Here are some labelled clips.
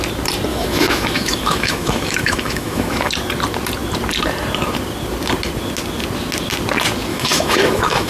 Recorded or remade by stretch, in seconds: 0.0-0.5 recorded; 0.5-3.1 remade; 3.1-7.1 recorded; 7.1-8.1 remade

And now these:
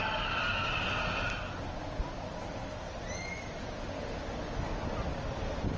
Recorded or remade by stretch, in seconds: 0.0-5.8 recorded

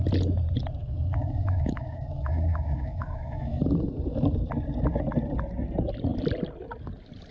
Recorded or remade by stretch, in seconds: 0.0-0.8 recorded; 0.8-3.6 remade; 3.6-7.3 recorded

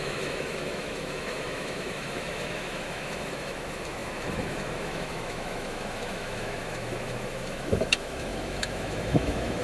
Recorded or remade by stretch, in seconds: 0.0-9.6 remade

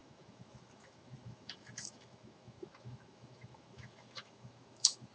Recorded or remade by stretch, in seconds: 0.0-5.1 remade

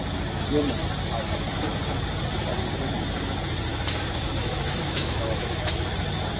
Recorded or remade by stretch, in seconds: 0.0-3.7 recorded; 3.7-5.9 remade; 5.9-6.4 recorded